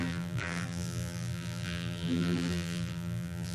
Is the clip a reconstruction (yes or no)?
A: yes